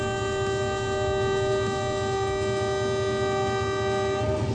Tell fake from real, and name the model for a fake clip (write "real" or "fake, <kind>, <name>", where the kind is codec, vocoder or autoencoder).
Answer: real